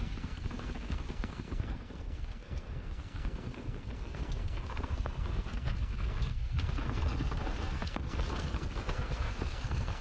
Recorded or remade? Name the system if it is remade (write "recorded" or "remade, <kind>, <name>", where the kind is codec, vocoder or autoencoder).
remade, codec, SNAC